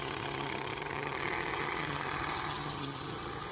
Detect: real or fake fake